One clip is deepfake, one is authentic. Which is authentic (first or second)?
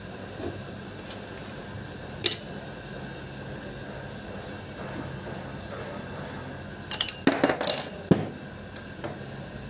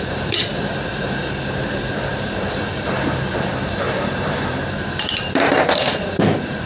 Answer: first